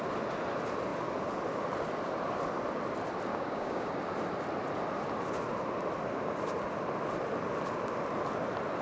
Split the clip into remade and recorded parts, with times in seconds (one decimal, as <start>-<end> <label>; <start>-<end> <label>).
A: 0.0-3.3 recorded; 3.3-3.9 remade; 3.9-8.8 recorded